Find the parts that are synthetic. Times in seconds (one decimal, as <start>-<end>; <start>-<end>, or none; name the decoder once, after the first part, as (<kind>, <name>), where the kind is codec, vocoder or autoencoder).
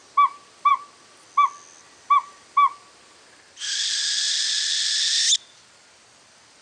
none